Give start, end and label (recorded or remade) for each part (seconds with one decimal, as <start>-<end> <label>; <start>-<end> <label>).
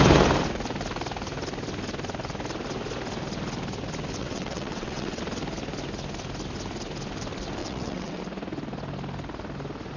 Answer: 0.0-4.2 recorded; 4.2-5.2 remade; 5.2-7.6 recorded; 7.6-8.2 remade; 8.2-10.0 recorded